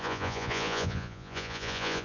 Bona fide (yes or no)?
no